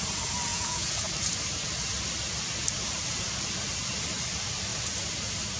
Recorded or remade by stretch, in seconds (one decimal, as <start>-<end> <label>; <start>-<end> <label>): 0.0-0.5 recorded; 0.5-1.1 remade; 1.1-5.6 recorded

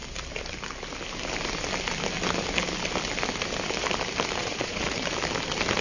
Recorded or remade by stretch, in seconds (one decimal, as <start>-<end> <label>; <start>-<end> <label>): 0.0-4.4 recorded; 4.4-4.9 remade; 4.9-5.8 recorded

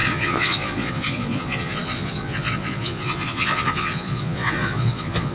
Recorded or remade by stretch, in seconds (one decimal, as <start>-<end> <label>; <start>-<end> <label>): 0.0-5.3 remade

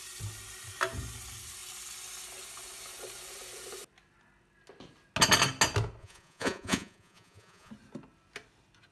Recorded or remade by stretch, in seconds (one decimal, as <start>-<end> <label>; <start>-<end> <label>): 0.0-6.0 recorded; 6.0-7.7 remade; 7.7-8.9 recorded

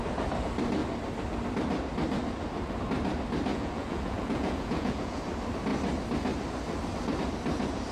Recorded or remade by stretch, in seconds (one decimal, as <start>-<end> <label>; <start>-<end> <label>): 0.0-3.5 recorded; 3.5-5.2 remade; 5.2-7.9 recorded

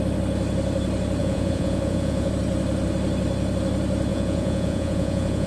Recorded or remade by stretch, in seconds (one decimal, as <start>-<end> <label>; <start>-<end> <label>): 0.0-1.2 recorded; 1.2-2.3 remade; 2.3-4.1 recorded; 4.1-5.5 remade

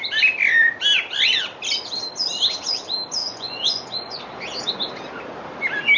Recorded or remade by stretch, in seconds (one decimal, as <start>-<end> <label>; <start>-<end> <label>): 0.0-3.2 recorded; 3.2-4.2 remade; 4.2-6.0 recorded

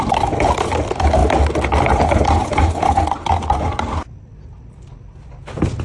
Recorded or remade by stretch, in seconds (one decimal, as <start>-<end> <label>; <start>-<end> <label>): 0.0-2.4 recorded; 2.4-3.0 remade; 3.0-5.8 recorded